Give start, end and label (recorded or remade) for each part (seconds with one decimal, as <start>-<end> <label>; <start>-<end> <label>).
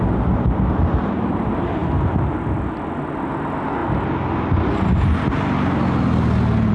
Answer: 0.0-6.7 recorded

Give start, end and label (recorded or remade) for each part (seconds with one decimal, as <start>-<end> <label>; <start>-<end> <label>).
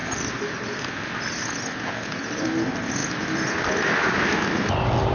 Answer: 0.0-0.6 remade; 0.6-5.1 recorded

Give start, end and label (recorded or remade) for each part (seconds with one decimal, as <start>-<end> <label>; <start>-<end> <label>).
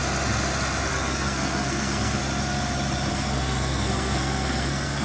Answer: 0.0-0.9 recorded; 0.9-2.2 remade; 2.2-3.1 recorded; 3.1-5.0 remade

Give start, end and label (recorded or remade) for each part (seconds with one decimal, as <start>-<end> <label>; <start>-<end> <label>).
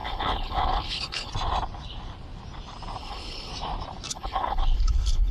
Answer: 0.0-1.3 remade; 1.3-3.0 recorded; 3.0-3.5 remade; 3.5-4.1 recorded; 4.1-5.3 remade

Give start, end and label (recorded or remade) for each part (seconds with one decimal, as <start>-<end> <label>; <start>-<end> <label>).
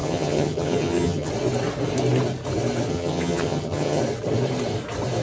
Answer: 0.0-1.3 remade; 1.3-2.9 recorded; 2.9-4.0 remade; 4.0-5.2 recorded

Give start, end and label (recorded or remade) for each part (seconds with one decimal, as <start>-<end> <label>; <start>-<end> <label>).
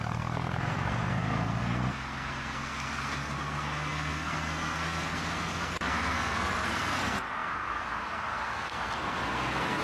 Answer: 0.0-9.8 remade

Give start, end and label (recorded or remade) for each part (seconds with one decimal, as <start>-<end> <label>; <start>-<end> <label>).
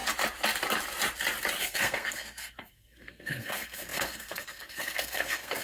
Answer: 0.0-1.6 recorded; 1.6-5.6 remade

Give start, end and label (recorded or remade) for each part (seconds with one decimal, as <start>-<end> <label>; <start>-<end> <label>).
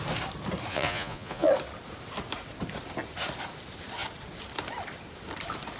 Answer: 0.0-0.7 recorded; 0.7-1.5 remade; 1.5-5.8 recorded